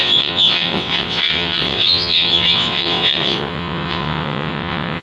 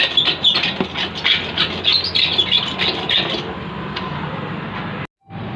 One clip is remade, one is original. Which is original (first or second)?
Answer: second